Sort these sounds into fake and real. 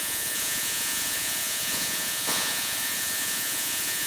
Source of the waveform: fake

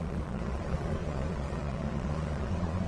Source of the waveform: fake